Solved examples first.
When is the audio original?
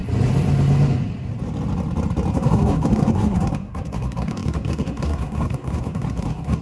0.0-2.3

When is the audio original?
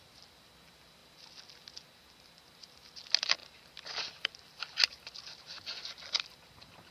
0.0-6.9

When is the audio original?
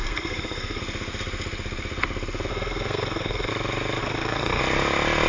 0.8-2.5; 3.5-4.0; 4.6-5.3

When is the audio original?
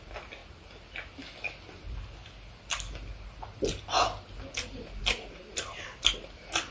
0.0-6.7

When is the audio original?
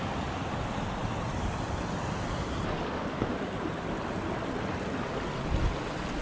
0.0-6.2